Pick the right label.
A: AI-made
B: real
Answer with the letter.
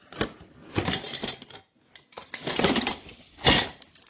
B